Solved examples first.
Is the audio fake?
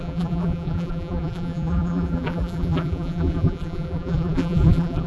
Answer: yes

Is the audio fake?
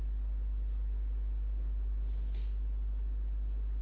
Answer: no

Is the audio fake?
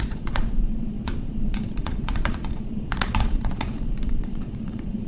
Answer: yes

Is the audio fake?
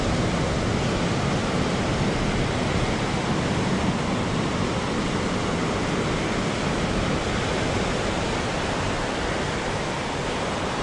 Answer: no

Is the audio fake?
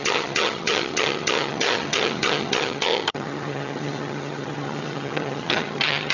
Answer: yes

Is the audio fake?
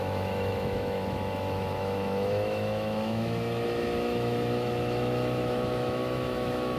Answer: yes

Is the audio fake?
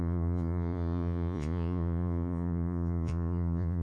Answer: yes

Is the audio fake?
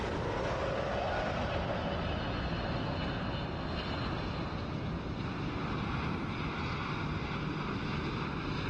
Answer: no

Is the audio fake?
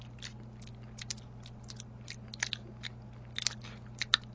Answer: no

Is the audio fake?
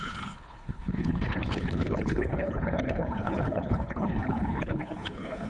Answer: yes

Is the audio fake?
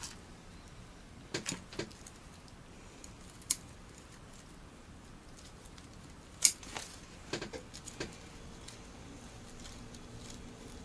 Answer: no